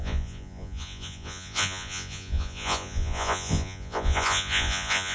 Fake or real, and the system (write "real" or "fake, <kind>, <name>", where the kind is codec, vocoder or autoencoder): fake, vocoder, Vocos